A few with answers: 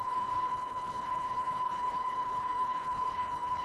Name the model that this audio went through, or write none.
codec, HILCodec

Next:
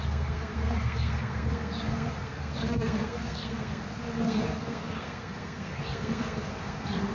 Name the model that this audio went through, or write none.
codec, SNAC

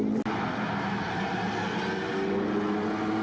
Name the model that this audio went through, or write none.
none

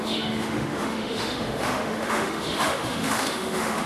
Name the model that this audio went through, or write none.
autoencoder, DAC-VAE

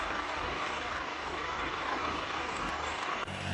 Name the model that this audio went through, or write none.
codec, DAC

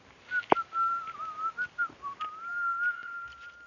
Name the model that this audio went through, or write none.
none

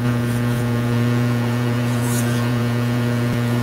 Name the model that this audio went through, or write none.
vocoder, Vocos